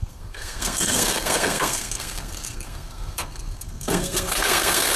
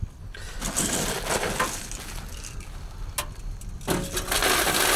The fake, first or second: first